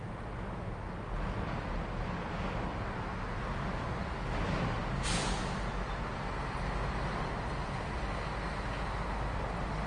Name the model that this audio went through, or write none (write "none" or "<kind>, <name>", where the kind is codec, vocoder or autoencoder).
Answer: none